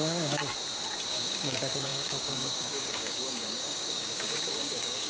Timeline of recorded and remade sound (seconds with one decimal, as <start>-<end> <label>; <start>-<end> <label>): 0.0-0.4 remade; 0.4-1.1 recorded; 1.1-5.1 remade